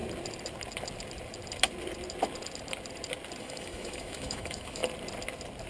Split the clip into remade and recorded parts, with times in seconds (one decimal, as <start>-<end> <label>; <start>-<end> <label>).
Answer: 0.0-3.4 recorded; 3.4-4.8 remade; 4.8-5.7 recorded

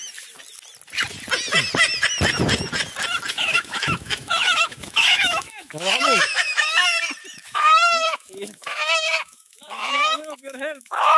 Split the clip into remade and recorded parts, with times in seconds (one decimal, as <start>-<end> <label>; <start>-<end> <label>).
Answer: 0.0-3.3 recorded; 3.3-6.8 remade; 6.8-7.3 recorded; 7.3-11.2 remade

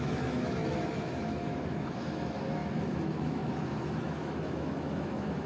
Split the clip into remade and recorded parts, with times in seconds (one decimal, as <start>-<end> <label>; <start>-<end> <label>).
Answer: 0.0-5.5 remade

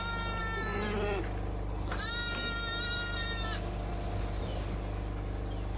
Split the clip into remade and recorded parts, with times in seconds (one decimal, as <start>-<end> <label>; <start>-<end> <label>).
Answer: 0.0-5.8 recorded

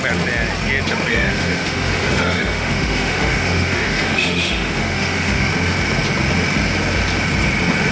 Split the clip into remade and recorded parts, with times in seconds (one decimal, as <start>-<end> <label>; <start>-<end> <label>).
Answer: 0.0-1.1 recorded; 1.1-5.5 remade; 5.5-7.9 recorded

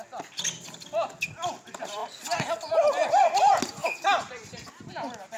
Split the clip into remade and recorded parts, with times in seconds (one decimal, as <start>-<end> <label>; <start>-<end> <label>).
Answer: 0.0-5.4 recorded

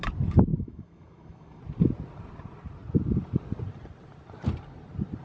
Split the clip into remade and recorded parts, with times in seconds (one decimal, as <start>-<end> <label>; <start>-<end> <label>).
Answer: 0.0-0.5 recorded; 0.5-1.6 remade; 1.6-5.2 recorded

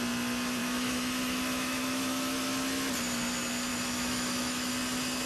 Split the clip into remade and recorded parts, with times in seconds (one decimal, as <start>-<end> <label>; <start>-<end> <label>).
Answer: 0.0-0.6 recorded; 0.6-2.4 remade; 2.4-3.7 recorded; 3.7-4.7 remade; 4.7-5.3 recorded